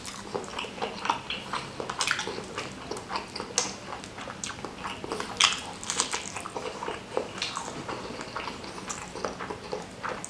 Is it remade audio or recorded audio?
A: recorded